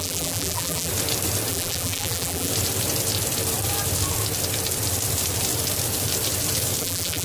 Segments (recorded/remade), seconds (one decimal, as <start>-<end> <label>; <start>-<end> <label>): 0.0-0.9 remade; 0.9-1.5 recorded; 1.5-2.5 remade; 2.5-6.8 recorded; 6.8-7.2 remade